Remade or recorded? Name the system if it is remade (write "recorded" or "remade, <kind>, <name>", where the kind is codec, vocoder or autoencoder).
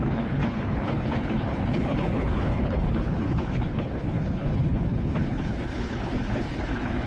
remade, codec, HILCodec